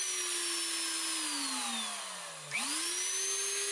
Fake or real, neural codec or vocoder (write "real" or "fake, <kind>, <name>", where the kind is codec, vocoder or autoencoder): real